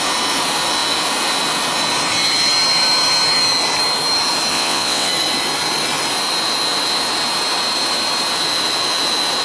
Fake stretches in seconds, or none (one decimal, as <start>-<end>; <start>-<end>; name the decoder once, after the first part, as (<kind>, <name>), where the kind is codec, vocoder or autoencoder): 4.5-5.1 (vocoder, WaveNeXt)